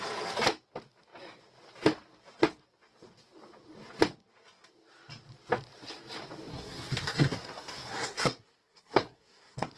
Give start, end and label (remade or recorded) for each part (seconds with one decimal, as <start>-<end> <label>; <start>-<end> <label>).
0.0-6.5 recorded; 6.5-9.8 remade